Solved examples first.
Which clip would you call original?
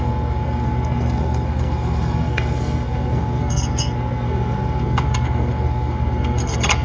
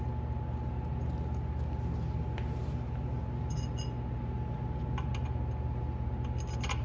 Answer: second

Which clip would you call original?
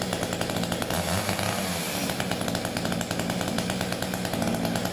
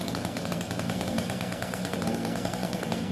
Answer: first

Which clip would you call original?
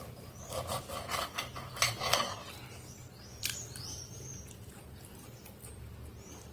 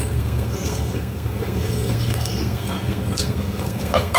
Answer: first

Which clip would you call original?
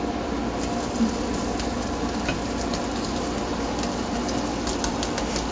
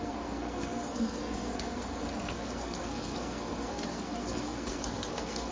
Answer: first